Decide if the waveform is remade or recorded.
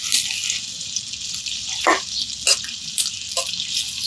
recorded